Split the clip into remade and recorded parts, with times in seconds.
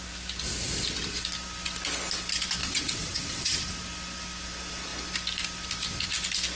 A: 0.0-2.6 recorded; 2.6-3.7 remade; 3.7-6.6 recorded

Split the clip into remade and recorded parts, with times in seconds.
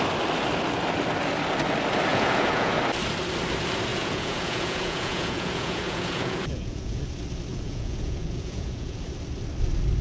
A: 0.0-2.1 recorded; 2.1-2.7 remade; 2.7-3.9 recorded; 3.9-7.0 remade; 7.0-7.5 recorded; 7.5-9.0 remade; 9.0-10.0 recorded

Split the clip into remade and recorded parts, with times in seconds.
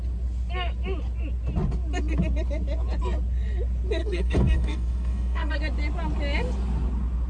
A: 0.0-4.0 recorded; 4.0-5.6 remade; 5.6-7.3 recorded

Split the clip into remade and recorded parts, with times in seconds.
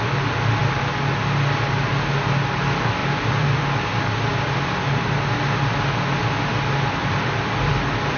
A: 0.0-3.0 recorded; 3.0-3.6 remade; 3.6-7.0 recorded; 7.0-8.2 remade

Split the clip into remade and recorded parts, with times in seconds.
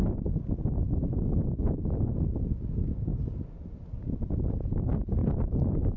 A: 0.0-5.2 recorded; 5.2-6.0 remade